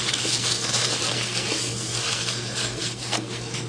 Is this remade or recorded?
remade